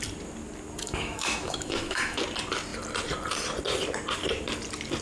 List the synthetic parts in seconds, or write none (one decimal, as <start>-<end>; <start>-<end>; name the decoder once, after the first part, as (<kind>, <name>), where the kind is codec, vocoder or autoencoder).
0.8-2.2 (autoencoder, DAC-VAE)